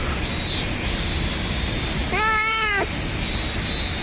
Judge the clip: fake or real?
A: real